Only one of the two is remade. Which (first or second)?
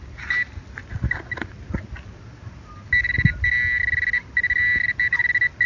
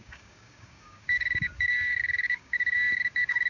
second